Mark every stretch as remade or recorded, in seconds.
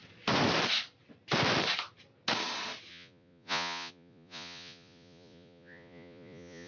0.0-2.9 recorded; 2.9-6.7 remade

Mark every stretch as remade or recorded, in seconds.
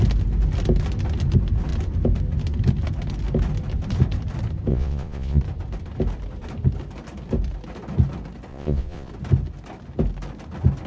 0.0-4.7 recorded; 4.7-5.4 remade; 5.4-8.5 recorded; 8.5-9.1 remade; 9.1-10.9 recorded